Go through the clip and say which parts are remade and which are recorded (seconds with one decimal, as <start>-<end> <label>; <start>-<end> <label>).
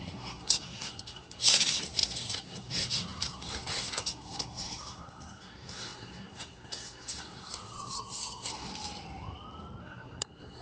0.0-8.7 remade; 8.7-9.8 recorded; 9.8-10.6 remade